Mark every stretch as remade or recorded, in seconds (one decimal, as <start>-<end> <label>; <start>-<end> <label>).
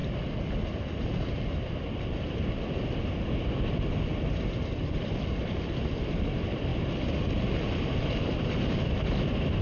0.0-9.6 recorded